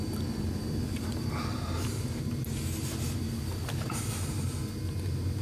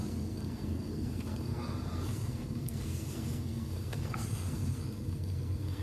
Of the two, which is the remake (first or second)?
second